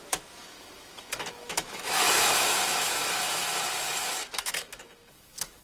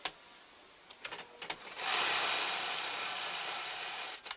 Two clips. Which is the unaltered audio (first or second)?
second